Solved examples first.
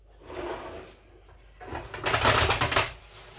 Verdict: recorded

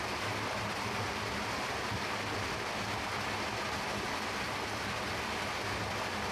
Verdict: recorded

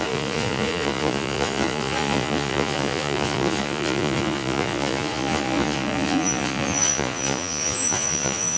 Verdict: remade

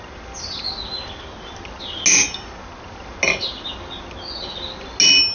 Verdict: recorded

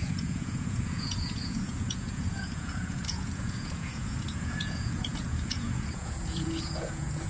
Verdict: remade